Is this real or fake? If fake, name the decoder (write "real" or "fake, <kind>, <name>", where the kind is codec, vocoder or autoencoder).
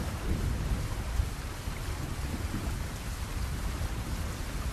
real